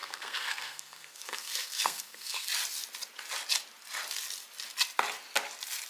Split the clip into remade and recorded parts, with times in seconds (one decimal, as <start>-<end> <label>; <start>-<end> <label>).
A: 0.0-2.5 remade; 2.5-5.9 recorded